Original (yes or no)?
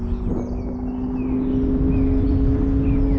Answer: yes